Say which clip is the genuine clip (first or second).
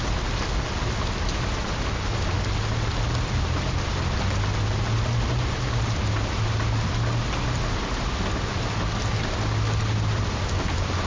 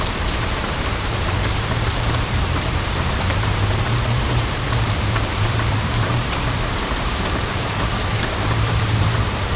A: first